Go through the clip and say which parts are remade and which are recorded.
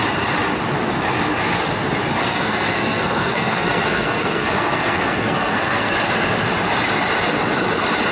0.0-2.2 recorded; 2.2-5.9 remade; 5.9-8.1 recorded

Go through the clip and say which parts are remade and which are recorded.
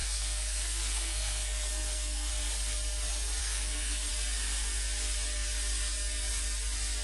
0.0-2.3 remade; 2.3-3.4 recorded; 3.4-4.1 remade; 4.1-7.0 recorded